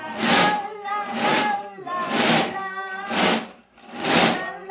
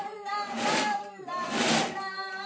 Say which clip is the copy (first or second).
second